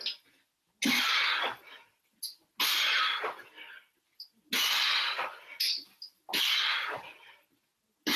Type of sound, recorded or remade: recorded